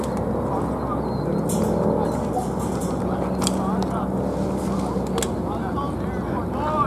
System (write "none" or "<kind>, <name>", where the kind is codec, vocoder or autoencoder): none